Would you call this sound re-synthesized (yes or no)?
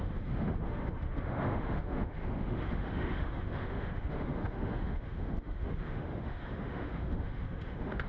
yes